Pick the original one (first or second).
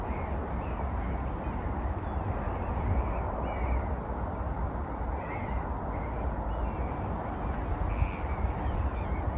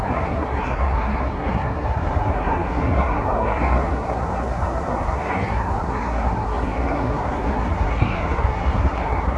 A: first